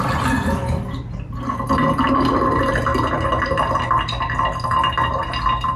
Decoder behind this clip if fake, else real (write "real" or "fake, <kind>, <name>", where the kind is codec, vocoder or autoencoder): real